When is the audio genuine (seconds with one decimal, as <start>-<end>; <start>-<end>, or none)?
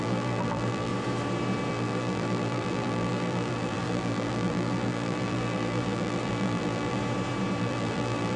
0.9-1.7; 7.0-7.6